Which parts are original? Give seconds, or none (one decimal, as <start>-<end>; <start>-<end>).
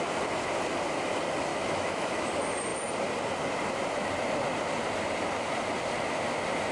0.0-1.5; 2.3-6.7